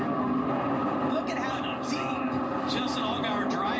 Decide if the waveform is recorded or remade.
recorded